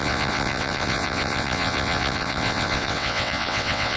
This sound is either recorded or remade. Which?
remade